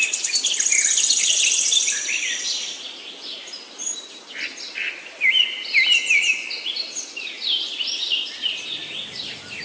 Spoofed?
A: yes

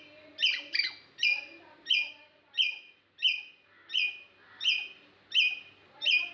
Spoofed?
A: no